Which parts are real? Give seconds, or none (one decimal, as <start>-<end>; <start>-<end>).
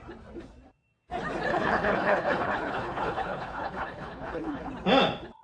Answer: 0.0-1.5; 4.7-5.4